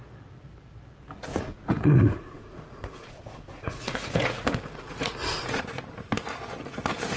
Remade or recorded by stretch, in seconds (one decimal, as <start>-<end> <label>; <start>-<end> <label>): 0.0-1.3 recorded; 1.3-5.6 remade; 5.6-7.2 recorded